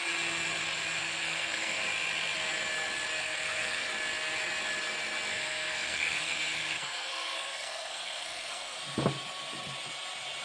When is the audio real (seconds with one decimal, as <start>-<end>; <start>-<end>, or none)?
0.0-1.0; 1.8-3.2; 3.9-5.3; 8.8-10.4